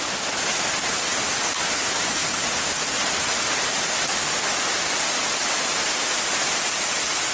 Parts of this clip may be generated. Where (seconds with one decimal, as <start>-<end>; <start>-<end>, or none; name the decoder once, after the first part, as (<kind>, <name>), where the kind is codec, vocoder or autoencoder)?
0.0-7.3 (vocoder, BigVGAN v2)